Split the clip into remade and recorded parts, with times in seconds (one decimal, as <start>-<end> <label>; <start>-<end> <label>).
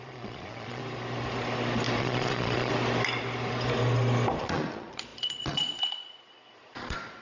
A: 0.0-0.8 remade; 0.8-2.0 recorded; 2.0-2.7 remade; 2.7-4.4 recorded; 4.4-7.2 remade